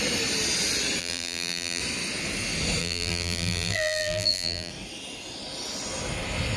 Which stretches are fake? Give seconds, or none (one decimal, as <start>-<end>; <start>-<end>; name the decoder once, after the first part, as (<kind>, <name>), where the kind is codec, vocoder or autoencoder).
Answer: 1.0-1.8 (vocoder, BigVGAN v2); 2.8-4.7